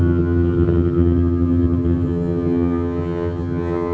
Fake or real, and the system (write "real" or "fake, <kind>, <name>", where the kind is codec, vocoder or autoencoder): fake, vocoder, HiFi-GAN